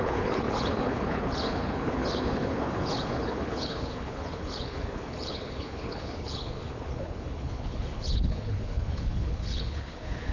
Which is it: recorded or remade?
remade